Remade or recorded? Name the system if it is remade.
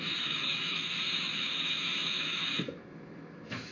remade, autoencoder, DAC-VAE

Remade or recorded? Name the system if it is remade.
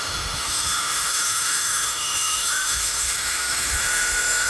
remade, autoencoder, DAC-VAE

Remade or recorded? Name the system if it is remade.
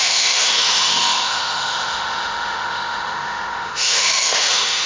remade, autoencoder, DAC-VAE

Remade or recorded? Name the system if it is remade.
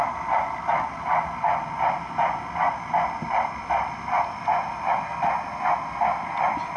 recorded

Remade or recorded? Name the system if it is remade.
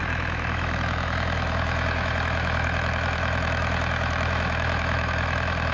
remade, autoencoder, DAC-VAE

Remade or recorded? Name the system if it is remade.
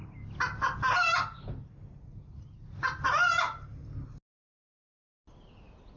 recorded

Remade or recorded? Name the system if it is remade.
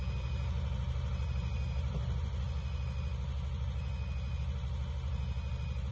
recorded